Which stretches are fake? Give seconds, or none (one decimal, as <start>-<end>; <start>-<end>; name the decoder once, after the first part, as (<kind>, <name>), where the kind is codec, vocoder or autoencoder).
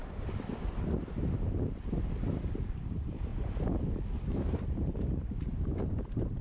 2.7-3.3 (vocoder, BigVGAN v2); 4.4-6.4